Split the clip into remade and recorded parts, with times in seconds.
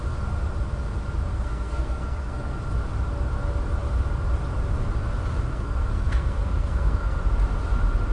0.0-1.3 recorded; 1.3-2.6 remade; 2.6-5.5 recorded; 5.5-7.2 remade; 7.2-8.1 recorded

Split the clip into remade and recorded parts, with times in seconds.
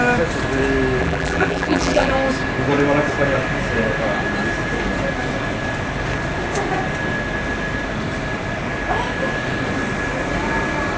0.0-1.0 recorded; 1.0-2.1 remade; 2.1-11.0 recorded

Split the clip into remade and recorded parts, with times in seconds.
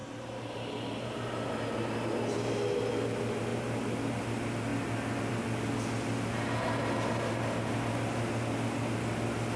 0.0-1.5 remade; 1.5-3.5 recorded; 3.5-4.2 remade; 4.2-9.6 recorded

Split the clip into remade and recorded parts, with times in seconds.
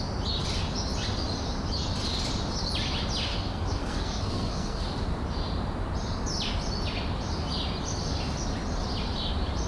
0.0-3.3 recorded; 3.3-4.8 remade; 4.8-9.7 recorded